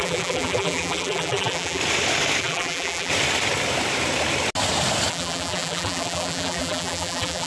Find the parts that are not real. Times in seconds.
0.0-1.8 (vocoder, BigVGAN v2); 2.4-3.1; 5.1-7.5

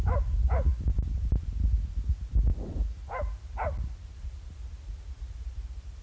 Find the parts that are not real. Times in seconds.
none

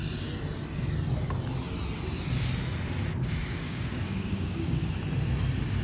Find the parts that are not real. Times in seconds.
3.4-5.0 (codec, DAC)

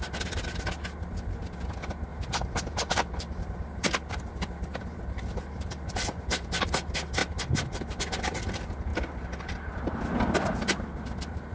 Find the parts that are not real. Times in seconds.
2.1-6.6 (vocoder, BigVGAN v2); 8.9-10.0